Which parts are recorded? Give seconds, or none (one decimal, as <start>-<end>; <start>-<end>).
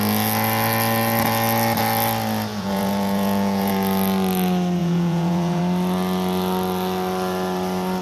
0.0-2.5; 3.7-4.8; 5.6-8.0